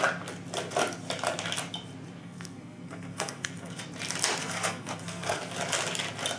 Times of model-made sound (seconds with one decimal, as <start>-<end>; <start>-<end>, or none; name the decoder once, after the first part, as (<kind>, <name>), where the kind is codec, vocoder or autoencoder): 2.2-3.8 (codec, SNAC); 4.4-5.4

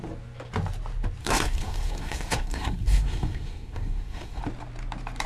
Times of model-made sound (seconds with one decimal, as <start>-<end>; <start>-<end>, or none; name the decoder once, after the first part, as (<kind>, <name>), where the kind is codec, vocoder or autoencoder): 1.2-4.4 (codec, SNAC)